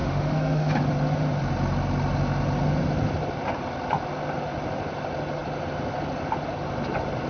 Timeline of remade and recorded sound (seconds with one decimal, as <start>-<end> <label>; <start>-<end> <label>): 0.0-0.7 remade; 0.7-7.3 recorded

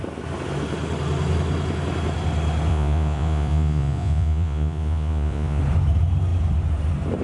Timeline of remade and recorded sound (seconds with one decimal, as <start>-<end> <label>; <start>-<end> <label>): 0.0-2.7 recorded; 2.7-5.6 remade; 5.6-7.2 recorded

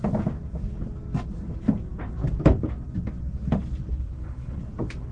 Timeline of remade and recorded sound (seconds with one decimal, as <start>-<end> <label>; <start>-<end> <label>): 0.0-3.9 recorded; 3.9-4.6 remade; 4.6-5.1 recorded

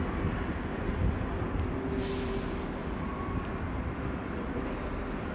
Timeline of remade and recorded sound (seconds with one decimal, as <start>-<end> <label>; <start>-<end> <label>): 0.0-1.2 remade; 1.2-2.8 recorded; 2.8-4.7 remade; 4.7-5.3 recorded

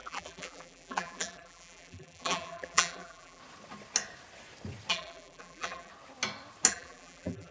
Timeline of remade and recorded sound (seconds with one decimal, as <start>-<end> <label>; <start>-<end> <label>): 0.0-3.4 remade; 3.4-4.9 recorded; 4.9-5.9 remade; 5.9-6.7 recorded; 6.7-7.5 remade